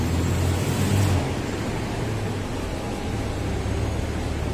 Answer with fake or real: real